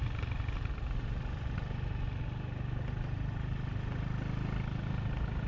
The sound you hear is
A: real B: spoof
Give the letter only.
A